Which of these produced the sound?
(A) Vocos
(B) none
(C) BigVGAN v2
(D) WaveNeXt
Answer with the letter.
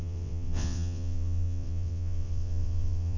D